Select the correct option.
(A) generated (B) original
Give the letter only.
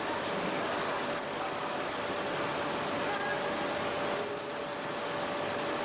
B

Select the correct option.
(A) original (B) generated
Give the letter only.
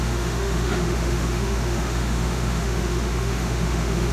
B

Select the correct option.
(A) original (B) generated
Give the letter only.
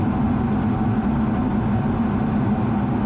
A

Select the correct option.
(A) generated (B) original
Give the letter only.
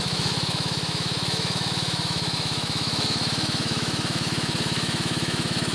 A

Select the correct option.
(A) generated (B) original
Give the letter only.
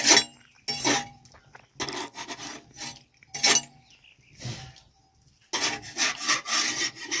B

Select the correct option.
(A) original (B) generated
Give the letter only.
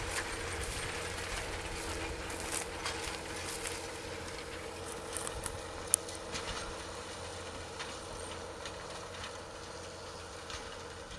A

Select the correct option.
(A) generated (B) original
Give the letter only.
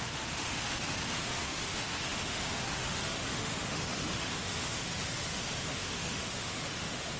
A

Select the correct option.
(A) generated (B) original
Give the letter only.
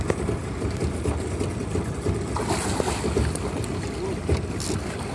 B